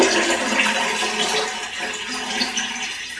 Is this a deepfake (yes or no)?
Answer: no